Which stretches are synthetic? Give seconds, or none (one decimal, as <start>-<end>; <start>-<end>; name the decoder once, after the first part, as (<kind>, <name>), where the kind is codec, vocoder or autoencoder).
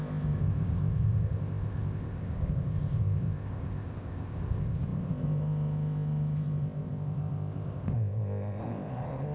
0.0-9.3 (codec, ZipCodec)